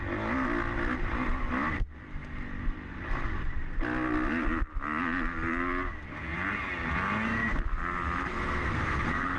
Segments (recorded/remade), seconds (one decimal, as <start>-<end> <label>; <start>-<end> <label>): 0.0-8.2 recorded; 8.2-9.4 remade